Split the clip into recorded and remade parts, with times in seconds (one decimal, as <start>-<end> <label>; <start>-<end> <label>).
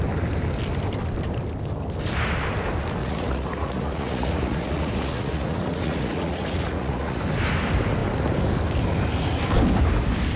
0.0-3.0 recorded; 3.0-7.2 remade; 7.2-10.4 recorded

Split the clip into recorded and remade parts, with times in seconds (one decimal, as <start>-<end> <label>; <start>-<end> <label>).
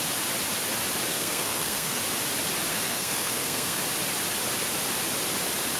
0.0-1.1 recorded; 1.1-2.0 remade; 2.0-2.7 recorded; 2.7-3.8 remade; 3.8-5.8 recorded